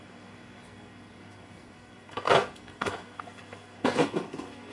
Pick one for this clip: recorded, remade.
remade